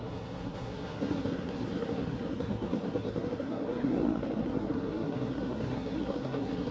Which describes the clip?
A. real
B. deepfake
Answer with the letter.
B